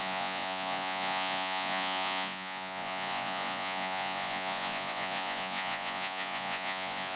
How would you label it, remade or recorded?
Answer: remade